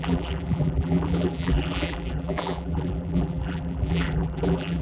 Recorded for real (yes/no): no